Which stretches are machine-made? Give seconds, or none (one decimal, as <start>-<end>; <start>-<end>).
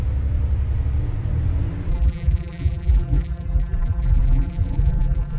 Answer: 1.9-5.4